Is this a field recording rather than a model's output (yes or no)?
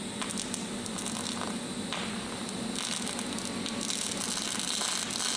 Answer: yes